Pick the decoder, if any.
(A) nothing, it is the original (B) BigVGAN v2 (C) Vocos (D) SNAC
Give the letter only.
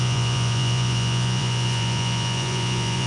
C